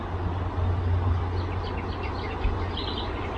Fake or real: real